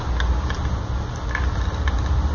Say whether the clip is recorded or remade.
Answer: recorded